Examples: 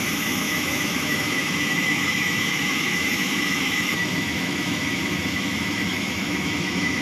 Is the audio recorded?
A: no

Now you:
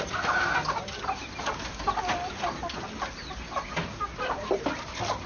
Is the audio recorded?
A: yes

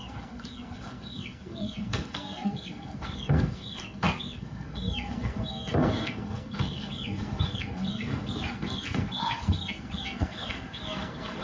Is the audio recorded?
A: no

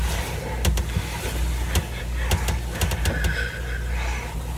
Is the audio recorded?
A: yes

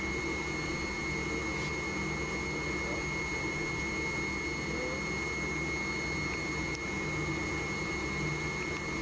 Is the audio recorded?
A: yes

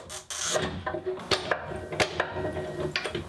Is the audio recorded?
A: yes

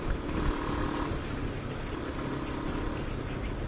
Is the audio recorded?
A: yes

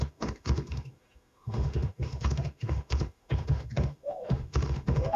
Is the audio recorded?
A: no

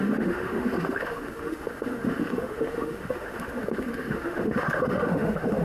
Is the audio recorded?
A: no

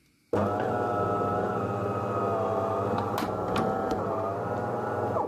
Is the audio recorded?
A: yes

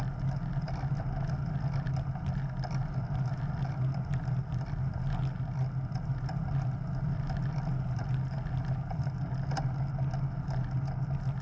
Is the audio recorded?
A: yes